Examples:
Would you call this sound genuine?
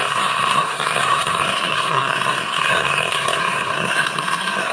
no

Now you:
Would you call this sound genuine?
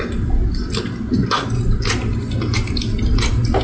yes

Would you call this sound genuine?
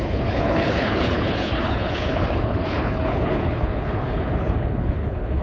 no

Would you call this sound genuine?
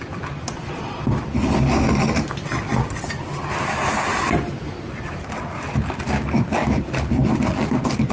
yes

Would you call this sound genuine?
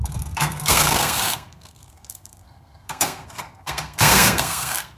no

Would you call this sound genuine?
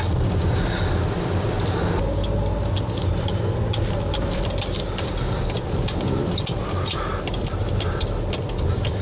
yes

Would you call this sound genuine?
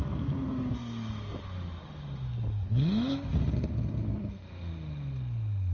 yes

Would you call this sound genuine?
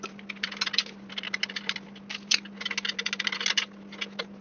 yes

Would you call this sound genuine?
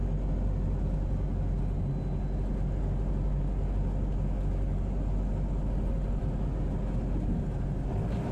yes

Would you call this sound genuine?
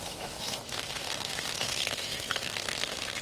no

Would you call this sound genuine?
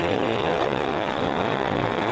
no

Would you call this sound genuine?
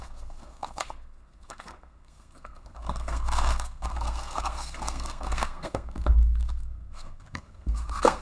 no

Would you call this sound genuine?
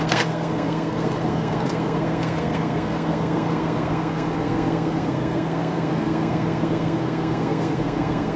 no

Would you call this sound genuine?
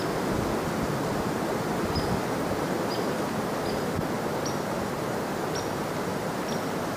yes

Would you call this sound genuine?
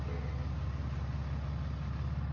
yes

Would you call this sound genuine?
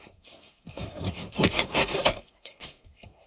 no